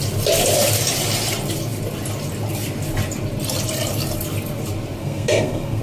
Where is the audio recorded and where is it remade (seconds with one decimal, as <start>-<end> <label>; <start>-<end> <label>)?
0.0-5.0 recorded; 5.0-5.8 remade